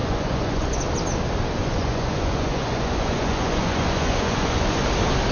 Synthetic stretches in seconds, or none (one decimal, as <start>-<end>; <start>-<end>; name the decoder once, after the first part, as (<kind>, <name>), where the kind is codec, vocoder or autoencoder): 0.0-0.8 (vocoder, Vocos); 1.6-4.8